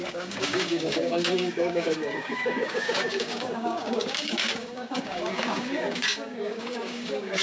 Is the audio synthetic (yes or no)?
yes